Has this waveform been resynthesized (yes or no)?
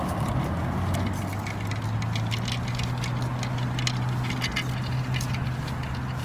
no